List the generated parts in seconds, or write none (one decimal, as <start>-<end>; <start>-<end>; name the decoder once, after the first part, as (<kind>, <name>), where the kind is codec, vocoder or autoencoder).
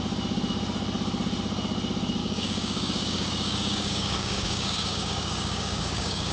2.2-6.3 (codec, DAC)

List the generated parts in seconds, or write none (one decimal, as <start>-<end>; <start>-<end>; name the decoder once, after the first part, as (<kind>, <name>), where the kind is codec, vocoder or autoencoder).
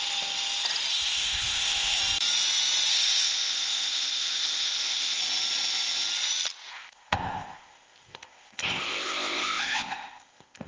0.9-2.0 (codec, ZipCodec); 2.9-5.2; 6.7-10.7